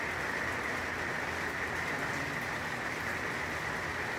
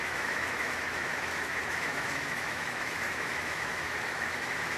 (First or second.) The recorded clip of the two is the first